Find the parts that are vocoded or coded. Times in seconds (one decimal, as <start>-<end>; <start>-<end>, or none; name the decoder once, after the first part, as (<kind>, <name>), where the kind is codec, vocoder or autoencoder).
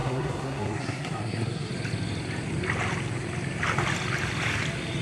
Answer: 0.0-1.7 (codec, SNAC)